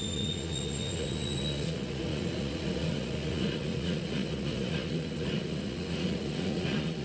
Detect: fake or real fake